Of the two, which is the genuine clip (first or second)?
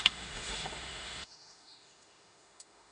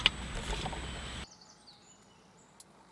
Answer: second